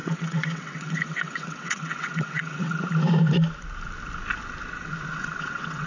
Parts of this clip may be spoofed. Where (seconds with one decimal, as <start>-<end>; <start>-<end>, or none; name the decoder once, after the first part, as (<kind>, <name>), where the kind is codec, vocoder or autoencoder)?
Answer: 0.0-2.7 (vocoder, WaveNeXt); 5.1-5.9